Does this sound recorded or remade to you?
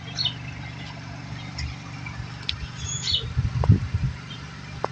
recorded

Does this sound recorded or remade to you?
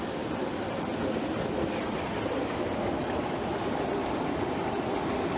recorded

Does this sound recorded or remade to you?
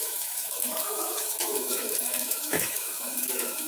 remade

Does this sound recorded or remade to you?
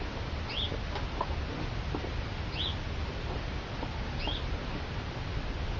recorded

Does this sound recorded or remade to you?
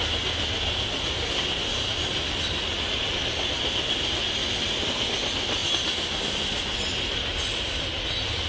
recorded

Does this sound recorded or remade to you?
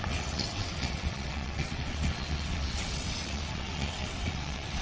remade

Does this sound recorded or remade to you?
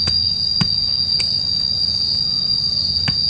recorded